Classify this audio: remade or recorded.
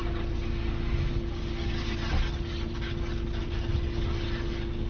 recorded